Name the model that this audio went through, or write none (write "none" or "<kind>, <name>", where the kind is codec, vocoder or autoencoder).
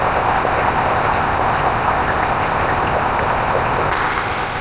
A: codec, ZipCodec